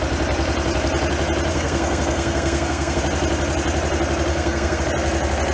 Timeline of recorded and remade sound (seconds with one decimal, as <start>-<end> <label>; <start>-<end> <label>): 0.0-1.5 recorded; 1.5-3.0 remade; 3.0-4.3 recorded; 4.3-4.8 remade; 4.8-5.5 recorded